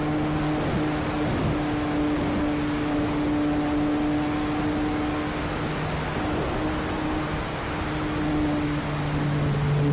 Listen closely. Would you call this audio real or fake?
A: real